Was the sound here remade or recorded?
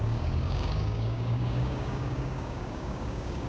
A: remade